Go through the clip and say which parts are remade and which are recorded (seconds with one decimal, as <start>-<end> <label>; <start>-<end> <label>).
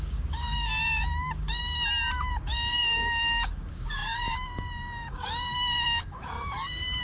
0.0-1.6 remade; 1.6-2.3 recorded; 2.3-7.0 remade